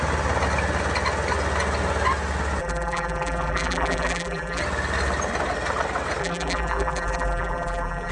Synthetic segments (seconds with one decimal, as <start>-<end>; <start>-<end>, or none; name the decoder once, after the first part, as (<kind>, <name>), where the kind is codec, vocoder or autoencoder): 2.6-4.6 (vocoder, BigVGAN v2); 6.2-8.1